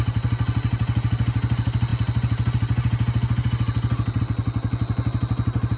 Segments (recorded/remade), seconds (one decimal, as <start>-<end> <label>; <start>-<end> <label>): 0.0-5.8 recorded

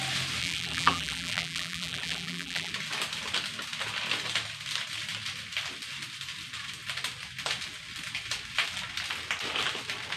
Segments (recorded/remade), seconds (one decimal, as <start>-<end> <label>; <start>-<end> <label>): 0.0-0.4 recorded; 0.4-2.7 remade; 2.7-10.2 recorded

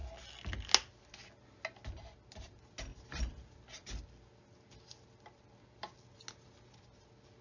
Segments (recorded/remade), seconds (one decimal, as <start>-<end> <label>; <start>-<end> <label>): 0.0-7.4 recorded

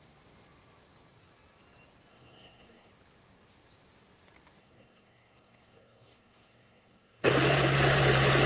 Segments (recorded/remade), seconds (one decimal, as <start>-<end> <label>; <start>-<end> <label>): 0.0-2.1 recorded; 2.1-2.9 remade; 2.9-4.6 recorded; 4.6-7.3 remade; 7.3-8.5 recorded

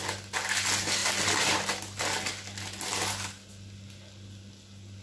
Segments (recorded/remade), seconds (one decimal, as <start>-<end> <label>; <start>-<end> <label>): 0.0-5.0 recorded